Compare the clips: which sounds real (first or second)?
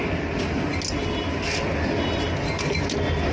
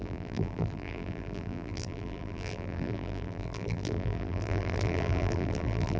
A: first